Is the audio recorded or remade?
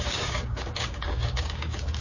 remade